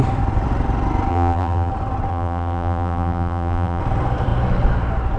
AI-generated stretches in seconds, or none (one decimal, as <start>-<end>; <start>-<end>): 1.1-1.7; 2.1-3.8